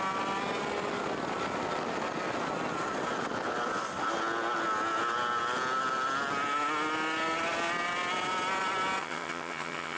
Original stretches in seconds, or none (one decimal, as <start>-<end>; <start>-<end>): 0.0-9.0